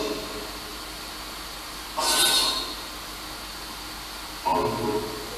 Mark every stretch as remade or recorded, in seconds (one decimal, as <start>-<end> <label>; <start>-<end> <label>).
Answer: 0.0-5.4 recorded